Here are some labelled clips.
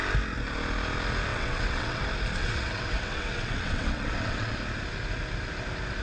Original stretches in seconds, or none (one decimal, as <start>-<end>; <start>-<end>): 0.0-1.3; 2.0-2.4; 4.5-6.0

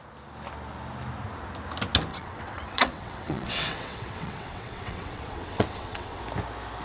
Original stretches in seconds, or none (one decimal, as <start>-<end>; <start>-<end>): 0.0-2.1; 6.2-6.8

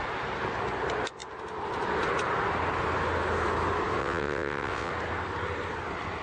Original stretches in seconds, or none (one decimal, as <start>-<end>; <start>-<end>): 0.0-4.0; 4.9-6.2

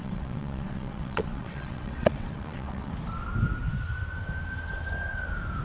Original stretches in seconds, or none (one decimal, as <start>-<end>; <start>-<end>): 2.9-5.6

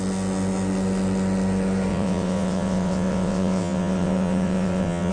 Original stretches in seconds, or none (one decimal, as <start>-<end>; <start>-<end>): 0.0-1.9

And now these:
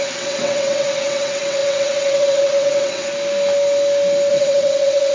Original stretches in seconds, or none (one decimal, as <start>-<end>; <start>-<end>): 3.1-4.3